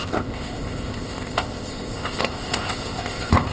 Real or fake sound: fake